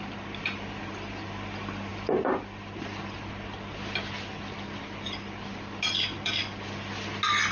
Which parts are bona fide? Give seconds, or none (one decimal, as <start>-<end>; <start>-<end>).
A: 0.0-7.5